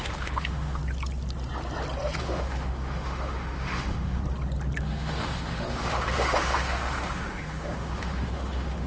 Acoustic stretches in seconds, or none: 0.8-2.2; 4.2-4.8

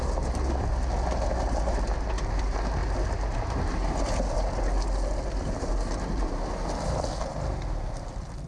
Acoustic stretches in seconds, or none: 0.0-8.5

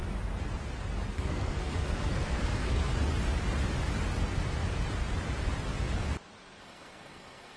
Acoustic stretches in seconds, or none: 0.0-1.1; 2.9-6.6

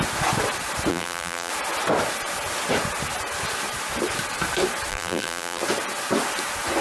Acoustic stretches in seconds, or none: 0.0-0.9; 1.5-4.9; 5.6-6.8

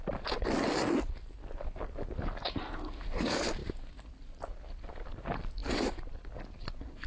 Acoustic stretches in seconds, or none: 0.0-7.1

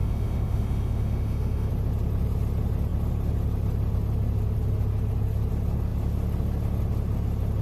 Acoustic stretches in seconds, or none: 1.7-7.6